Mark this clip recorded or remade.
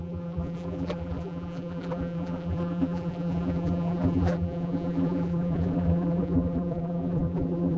remade